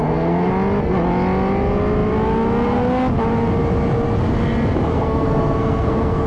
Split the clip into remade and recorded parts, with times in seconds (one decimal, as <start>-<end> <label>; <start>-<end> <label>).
0.0-0.5 remade; 0.5-4.9 recorded; 4.9-6.3 remade